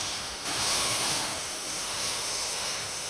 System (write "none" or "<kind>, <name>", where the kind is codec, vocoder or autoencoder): autoencoder, DAC-VAE